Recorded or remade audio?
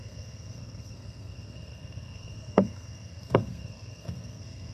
remade